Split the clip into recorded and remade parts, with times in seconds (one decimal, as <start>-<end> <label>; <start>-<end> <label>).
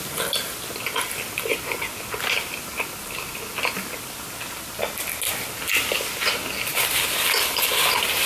0.0-8.3 recorded